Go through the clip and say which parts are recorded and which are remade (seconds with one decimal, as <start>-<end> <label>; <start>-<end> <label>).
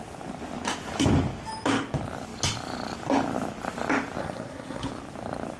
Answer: 0.0-4.2 recorded; 4.2-4.9 remade; 4.9-5.6 recorded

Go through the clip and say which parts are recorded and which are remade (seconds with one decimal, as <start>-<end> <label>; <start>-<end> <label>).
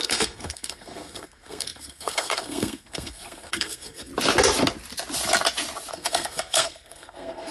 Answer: 0.0-4.1 remade; 4.1-5.9 recorded; 5.9-7.5 remade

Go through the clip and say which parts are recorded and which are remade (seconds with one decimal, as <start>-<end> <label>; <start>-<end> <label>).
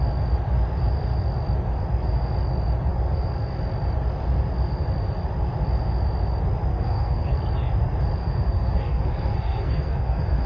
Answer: 0.0-6.7 recorded; 6.7-7.4 remade; 7.4-8.2 recorded; 8.2-10.5 remade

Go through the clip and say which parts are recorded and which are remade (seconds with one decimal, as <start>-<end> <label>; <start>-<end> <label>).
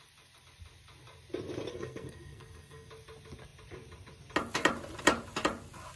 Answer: 0.0-1.7 recorded; 1.7-2.9 remade; 2.9-6.0 recorded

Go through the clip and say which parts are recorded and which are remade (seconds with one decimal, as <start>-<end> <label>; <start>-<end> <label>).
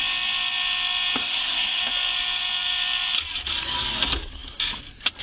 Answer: 0.0-1.2 recorded; 1.2-1.8 remade; 1.8-5.2 recorded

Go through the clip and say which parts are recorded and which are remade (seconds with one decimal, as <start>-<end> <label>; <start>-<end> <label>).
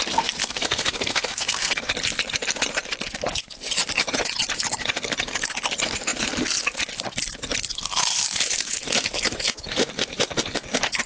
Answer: 0.0-0.4 recorded; 0.4-1.8 remade; 1.8-11.1 recorded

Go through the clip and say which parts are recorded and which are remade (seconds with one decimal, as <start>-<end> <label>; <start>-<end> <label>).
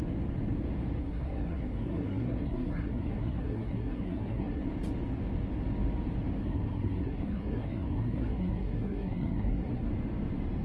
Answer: 0.0-1.0 recorded; 1.0-4.6 remade; 4.6-6.4 recorded; 6.4-9.9 remade; 9.9-10.6 recorded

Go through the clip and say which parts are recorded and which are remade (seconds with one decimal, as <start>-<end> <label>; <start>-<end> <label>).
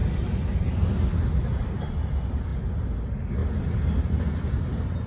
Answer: 0.0-5.1 recorded